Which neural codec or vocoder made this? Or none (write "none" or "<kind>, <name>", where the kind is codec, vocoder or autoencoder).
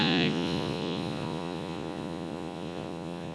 vocoder, Vocos